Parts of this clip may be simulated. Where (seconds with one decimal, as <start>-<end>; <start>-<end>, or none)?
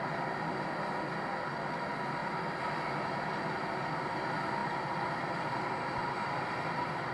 none